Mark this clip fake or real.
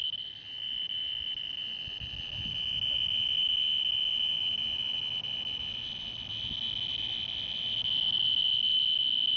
real